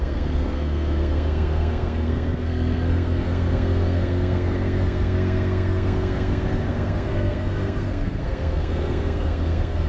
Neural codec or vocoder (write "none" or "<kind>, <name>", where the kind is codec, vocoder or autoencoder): codec, SNAC